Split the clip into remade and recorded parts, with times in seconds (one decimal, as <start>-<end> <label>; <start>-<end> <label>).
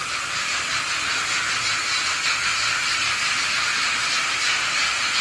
0.0-2.5 recorded; 2.5-4.7 remade; 4.7-5.2 recorded